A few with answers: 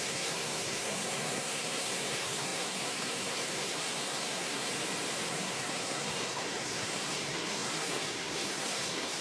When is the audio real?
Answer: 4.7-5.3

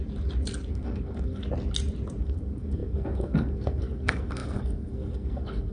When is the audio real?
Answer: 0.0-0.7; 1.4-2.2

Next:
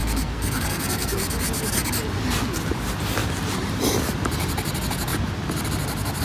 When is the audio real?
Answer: 1.2-6.2

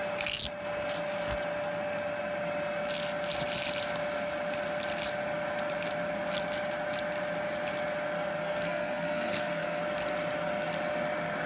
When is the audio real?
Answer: 0.0-8.4; 9.8-11.5